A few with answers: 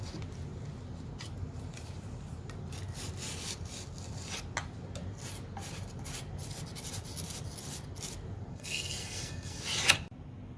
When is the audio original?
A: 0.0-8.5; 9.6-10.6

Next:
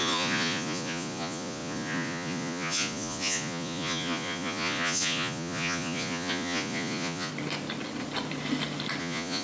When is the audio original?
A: 7.3-9.0

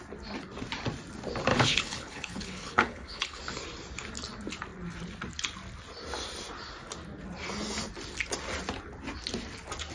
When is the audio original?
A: 0.0-1.5; 3.4-9.9

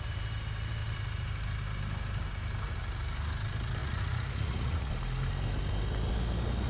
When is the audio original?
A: 0.0-3.8; 4.9-6.7

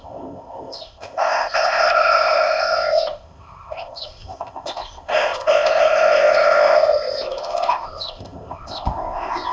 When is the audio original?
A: none

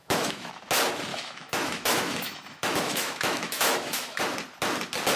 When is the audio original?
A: 0.5-1.1; 4.2-5.2